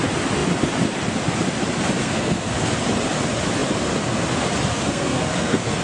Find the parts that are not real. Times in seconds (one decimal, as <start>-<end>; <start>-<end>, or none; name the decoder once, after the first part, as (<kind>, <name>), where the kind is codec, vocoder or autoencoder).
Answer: 2.0-2.7 (codec, SNAC); 4.7-5.8

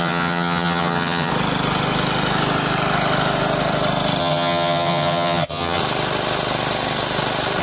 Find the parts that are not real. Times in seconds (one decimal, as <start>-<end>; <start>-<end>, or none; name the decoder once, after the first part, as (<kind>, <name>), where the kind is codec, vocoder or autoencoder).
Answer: 0.0-1.3 (vocoder, HiFi-GAN); 4.2-5.8

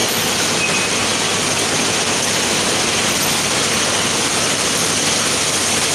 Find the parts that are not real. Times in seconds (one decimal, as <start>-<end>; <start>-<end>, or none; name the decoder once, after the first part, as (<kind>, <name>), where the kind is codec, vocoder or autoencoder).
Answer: none

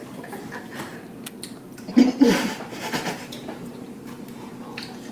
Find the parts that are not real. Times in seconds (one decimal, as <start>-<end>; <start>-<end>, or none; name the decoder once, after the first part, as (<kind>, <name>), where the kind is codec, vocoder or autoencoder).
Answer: 1.9-4.5 (vocoder, BigVGAN v2)

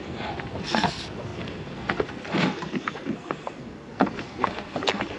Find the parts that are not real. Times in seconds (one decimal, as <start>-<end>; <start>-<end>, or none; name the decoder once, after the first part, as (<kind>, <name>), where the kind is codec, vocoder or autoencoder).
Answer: 0.0-5.2 (codec, SNAC)

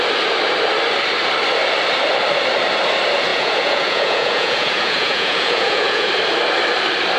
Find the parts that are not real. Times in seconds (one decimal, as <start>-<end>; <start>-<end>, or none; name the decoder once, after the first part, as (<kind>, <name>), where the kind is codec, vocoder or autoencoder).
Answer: 3.3-6.1 (vocoder, Vocos)